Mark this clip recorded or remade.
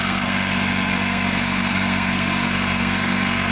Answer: remade